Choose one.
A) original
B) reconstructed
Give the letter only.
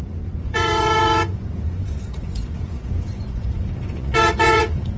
B